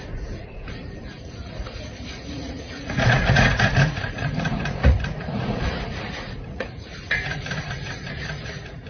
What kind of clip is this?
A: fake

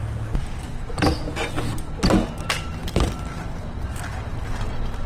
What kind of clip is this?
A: real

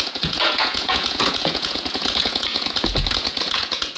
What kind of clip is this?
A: fake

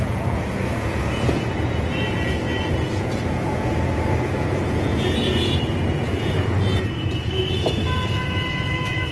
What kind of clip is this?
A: fake